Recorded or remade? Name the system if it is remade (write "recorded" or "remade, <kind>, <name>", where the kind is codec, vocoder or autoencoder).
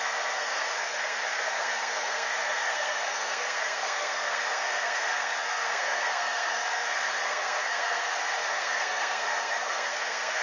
remade, codec, SNAC